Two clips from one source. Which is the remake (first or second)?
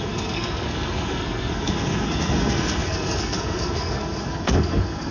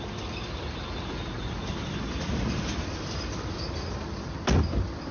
first